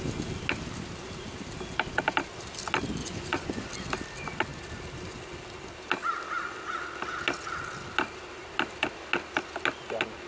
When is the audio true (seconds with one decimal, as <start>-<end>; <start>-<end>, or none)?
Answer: 0.0-3.0; 3.7-10.3